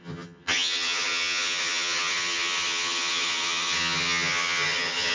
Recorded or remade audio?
remade